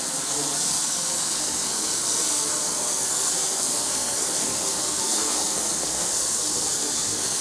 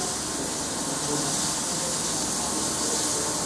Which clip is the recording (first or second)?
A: second